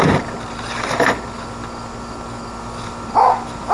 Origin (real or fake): real